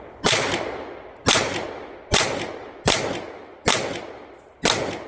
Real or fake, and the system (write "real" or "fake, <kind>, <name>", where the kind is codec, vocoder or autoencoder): real